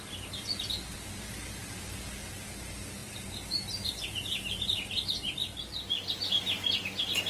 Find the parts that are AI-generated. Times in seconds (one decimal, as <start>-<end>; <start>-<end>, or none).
none